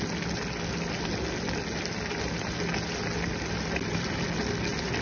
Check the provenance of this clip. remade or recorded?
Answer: recorded